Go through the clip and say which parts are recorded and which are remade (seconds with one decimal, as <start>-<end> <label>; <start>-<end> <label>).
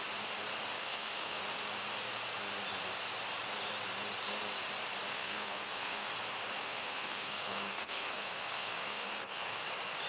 0.0-0.8 recorded; 0.8-1.4 remade; 1.4-5.1 recorded; 5.1-6.1 remade; 6.1-6.6 recorded; 6.6-9.6 remade; 9.6-10.1 recorded